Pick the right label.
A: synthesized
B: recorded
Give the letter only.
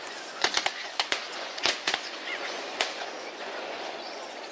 A